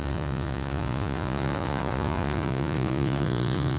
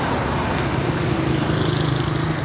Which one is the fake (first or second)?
first